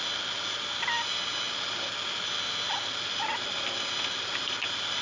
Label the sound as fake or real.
real